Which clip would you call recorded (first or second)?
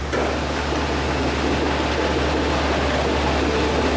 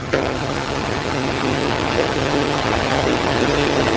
first